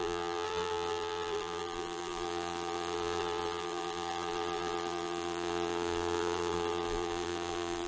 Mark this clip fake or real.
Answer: fake